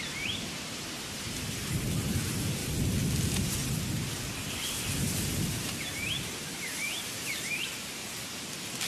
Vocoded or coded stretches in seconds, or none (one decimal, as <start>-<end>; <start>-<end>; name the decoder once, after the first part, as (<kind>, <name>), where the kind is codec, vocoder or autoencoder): 0.0-2.6 (vocoder, BigVGAN v2); 4.5-8.0